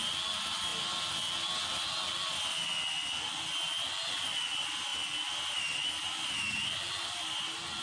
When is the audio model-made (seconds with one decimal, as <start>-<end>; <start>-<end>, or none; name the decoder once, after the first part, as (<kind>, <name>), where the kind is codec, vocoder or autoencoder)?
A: none